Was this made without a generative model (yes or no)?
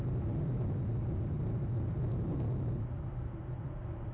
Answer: yes